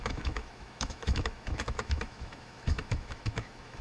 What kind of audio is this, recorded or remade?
remade